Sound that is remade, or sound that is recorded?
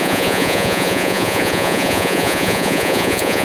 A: remade